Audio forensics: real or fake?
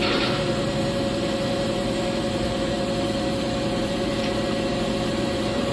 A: fake